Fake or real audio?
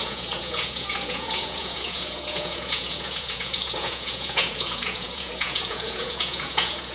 fake